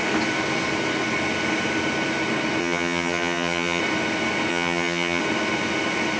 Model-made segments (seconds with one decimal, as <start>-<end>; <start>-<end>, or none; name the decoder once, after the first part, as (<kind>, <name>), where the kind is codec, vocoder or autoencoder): 2.6-3.8 (vocoder, HiFi-GAN); 4.5-5.2